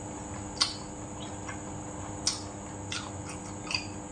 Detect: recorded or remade recorded